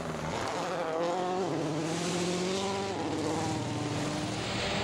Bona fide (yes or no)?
yes